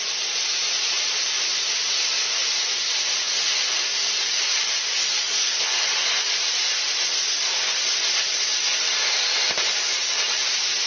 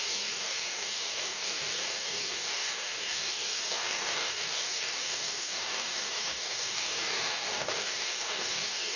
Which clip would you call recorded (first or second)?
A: first